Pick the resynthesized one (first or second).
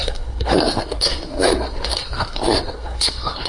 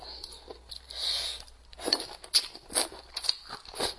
first